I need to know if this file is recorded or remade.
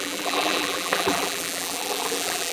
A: remade